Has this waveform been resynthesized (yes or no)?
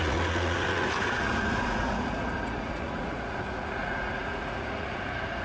yes